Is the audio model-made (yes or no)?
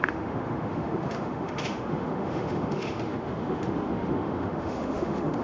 yes